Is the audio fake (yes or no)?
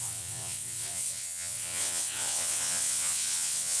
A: yes